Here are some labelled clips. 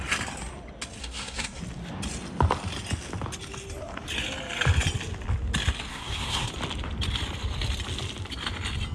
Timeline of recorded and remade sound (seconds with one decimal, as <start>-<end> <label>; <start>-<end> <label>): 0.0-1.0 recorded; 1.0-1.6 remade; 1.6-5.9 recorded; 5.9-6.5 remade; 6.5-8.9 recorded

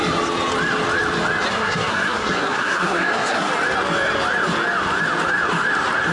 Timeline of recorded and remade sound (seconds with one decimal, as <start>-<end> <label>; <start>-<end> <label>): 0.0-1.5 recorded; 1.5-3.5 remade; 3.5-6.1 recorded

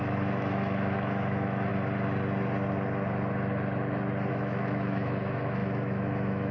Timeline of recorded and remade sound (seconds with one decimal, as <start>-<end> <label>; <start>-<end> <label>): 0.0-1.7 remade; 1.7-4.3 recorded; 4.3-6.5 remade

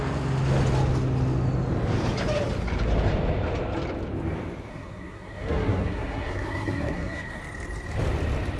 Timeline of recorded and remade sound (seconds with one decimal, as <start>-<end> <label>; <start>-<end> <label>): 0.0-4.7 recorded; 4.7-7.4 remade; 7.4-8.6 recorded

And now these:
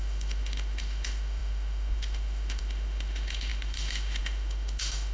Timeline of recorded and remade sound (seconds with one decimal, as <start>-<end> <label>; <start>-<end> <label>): 0.0-5.1 remade